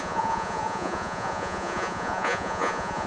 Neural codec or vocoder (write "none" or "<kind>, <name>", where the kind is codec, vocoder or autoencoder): vocoder, Vocos